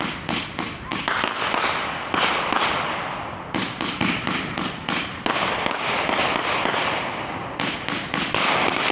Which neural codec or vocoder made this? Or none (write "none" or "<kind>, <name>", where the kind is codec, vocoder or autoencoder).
none